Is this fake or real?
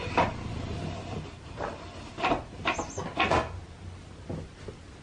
real